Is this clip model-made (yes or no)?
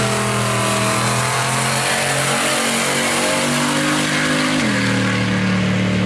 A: no